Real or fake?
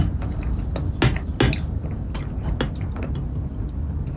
real